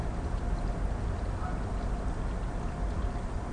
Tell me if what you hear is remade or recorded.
recorded